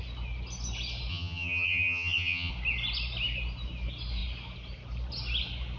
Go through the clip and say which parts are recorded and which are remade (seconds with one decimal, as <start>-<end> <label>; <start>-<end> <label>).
0.0-1.1 recorded; 1.1-2.5 remade; 2.5-5.8 recorded